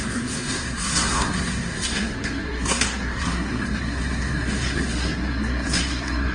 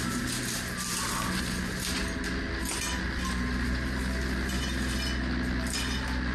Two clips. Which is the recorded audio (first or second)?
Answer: second